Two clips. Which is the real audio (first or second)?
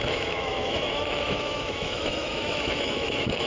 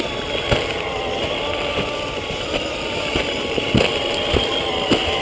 second